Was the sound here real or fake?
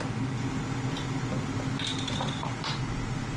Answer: real